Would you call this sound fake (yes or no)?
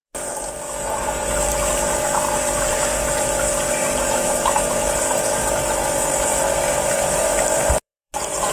yes